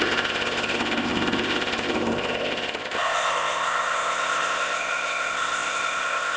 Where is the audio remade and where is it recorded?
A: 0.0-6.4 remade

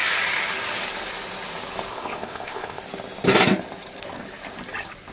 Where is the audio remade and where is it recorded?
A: 0.0-1.9 recorded; 1.9-2.8 remade; 2.8-5.1 recorded

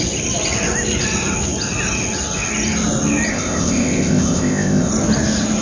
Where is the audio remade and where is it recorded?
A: 0.0-3.3 recorded; 3.3-4.9 remade; 4.9-5.6 recorded

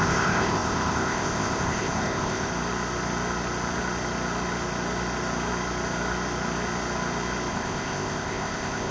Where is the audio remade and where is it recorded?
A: 0.0-2.5 remade; 2.5-7.5 recorded; 7.5-8.9 remade

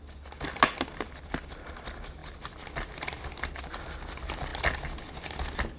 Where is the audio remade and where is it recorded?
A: 0.0-5.8 recorded

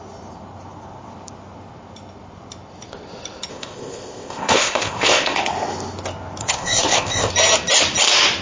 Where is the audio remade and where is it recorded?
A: 0.0-3.5 recorded; 3.5-5.4 remade; 5.4-6.4 recorded; 6.4-7.3 remade; 7.3-8.4 recorded